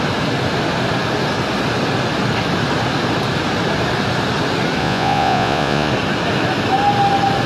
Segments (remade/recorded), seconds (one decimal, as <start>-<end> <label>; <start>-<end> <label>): 0.0-4.8 recorded; 4.8-5.9 remade; 5.9-7.5 recorded